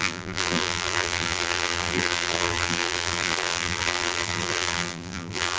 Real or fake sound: fake